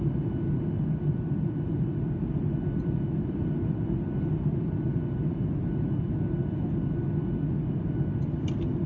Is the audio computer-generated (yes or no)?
no